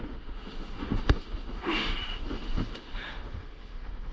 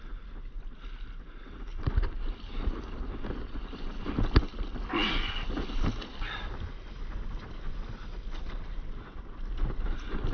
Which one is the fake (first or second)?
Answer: first